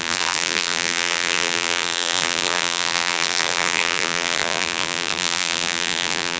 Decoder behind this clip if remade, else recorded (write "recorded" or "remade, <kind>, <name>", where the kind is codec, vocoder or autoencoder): remade, vocoder, BigVGAN v2